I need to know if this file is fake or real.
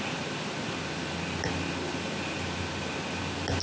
real